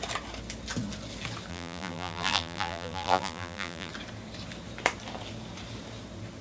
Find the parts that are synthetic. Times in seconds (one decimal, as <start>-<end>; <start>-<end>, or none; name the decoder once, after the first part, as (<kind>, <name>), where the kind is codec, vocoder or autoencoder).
1.5-3.9 (vocoder, BigVGAN v2)